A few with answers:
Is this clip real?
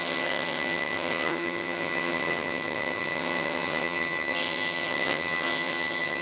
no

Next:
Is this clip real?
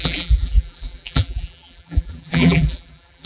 no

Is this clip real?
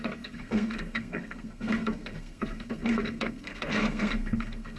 no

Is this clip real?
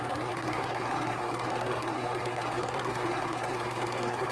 no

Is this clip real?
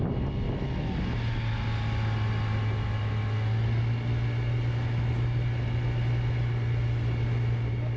yes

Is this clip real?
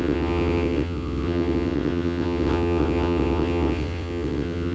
no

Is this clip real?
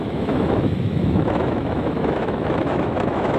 no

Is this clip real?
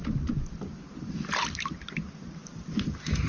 yes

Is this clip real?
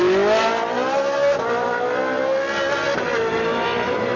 yes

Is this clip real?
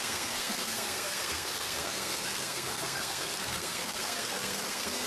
no